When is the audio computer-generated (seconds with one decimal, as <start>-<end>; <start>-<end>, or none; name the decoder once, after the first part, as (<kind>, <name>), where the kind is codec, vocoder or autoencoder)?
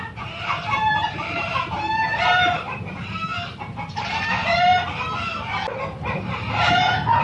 0.0-4.7 (vocoder, BigVGAN v2); 5.7-7.2